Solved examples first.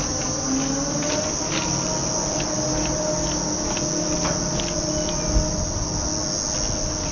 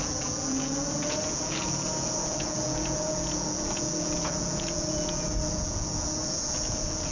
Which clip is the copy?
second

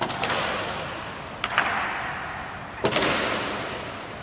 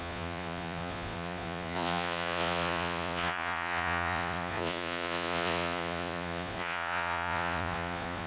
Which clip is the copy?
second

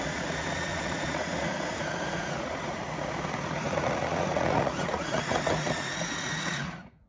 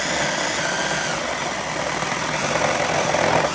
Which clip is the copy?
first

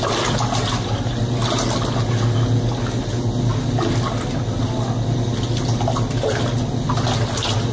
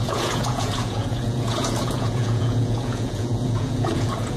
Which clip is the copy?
second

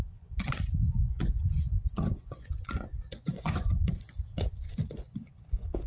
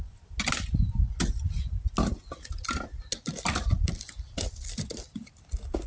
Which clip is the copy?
first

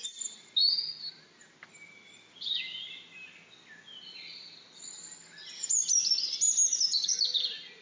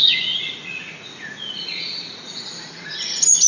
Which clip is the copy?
second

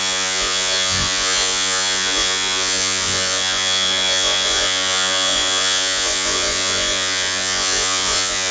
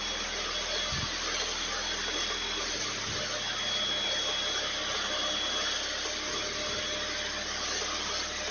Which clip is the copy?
first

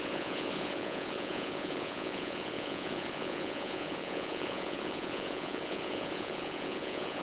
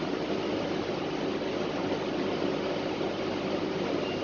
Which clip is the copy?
first